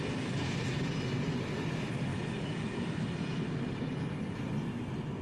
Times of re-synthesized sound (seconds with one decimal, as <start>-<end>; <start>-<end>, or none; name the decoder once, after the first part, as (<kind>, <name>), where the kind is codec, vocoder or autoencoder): none